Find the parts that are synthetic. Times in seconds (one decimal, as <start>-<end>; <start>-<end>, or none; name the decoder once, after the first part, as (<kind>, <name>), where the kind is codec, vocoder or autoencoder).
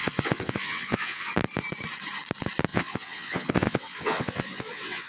0.0-1.3 (vocoder, WaveNeXt); 2.7-5.1